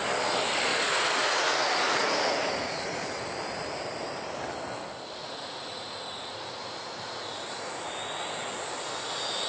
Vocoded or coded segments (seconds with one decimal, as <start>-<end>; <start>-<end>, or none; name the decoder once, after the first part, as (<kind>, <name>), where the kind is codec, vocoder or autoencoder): 0.7-3.0 (vocoder, Vocos); 5.2-7.8

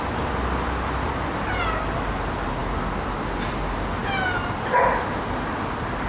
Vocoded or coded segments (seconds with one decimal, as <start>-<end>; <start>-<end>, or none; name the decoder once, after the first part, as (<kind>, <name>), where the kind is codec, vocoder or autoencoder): none

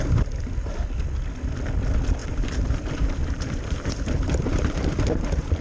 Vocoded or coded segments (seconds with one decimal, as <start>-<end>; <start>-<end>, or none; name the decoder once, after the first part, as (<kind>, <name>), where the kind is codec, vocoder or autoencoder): 2.2-5.6 (vocoder, BigVGAN v2)